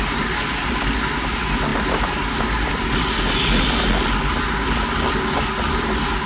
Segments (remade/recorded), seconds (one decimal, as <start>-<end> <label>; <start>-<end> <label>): 0.0-6.3 recorded

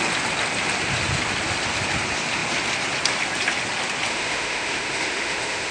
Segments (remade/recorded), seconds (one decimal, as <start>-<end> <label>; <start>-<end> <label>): 0.0-4.1 recorded; 4.1-5.7 remade

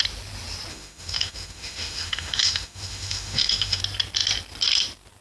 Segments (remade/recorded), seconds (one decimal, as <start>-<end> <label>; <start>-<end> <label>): 0.0-0.7 recorded; 0.7-3.8 remade; 3.8-5.2 recorded

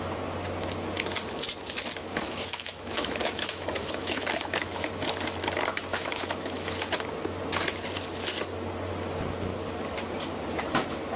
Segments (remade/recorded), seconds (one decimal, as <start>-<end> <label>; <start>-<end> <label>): 0.0-2.0 recorded; 2.0-4.9 remade; 4.9-5.9 recorded; 5.9-6.9 remade; 6.9-11.2 recorded

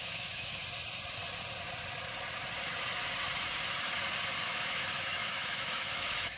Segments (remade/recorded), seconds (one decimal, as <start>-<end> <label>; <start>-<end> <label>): 0.0-0.6 remade; 0.6-4.4 recorded; 4.4-6.4 remade

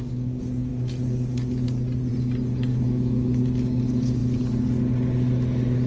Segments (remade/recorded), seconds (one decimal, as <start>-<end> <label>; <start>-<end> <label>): 0.0-2.7 recorded; 2.7-3.4 remade; 3.4-5.9 recorded

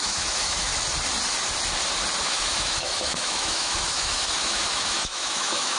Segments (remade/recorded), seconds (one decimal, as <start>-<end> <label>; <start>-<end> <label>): 0.0-0.7 remade; 0.7-2.2 recorded; 2.2-5.8 remade